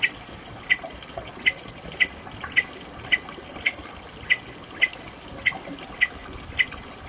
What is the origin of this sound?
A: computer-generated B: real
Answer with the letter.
B